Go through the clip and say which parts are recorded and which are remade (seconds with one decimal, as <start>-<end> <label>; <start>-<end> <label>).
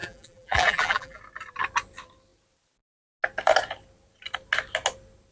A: 0.0-1.2 remade; 1.2-5.3 recorded